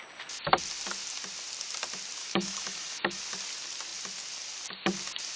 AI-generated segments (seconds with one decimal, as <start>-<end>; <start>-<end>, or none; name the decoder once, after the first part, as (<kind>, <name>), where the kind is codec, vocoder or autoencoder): 2.2-3.2 (autoencoder, DAC-VAE)